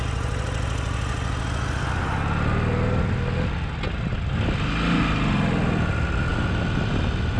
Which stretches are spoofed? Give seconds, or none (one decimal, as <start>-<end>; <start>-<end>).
none